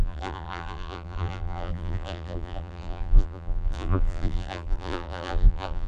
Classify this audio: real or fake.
fake